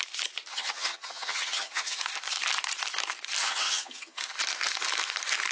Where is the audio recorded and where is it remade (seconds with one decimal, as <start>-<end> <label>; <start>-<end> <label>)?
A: 0.0-0.5 recorded; 0.5-2.0 remade; 2.0-3.4 recorded; 3.4-4.2 remade; 4.2-5.5 recorded